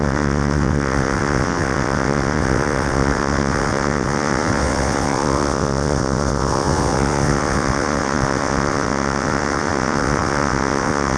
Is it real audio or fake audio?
fake